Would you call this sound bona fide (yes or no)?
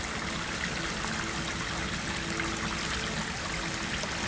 yes